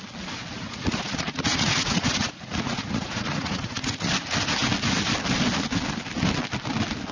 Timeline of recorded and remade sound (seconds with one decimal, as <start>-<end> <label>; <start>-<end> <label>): 0.0-0.5 recorded; 0.5-4.1 remade; 4.1-7.1 recorded